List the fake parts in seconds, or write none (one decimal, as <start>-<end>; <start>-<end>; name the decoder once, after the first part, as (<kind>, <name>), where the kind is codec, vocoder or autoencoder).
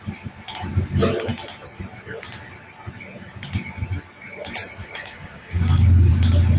4.8-6.1 (codec, DAC)